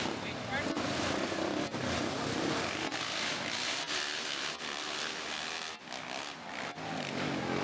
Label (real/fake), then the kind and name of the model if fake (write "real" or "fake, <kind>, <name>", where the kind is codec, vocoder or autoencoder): real